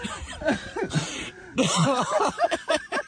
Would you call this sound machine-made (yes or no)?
yes